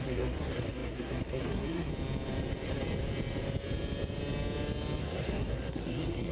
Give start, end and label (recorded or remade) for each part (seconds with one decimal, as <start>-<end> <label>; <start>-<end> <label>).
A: 0.0-1.9 remade; 1.9-5.0 recorded; 5.0-6.3 remade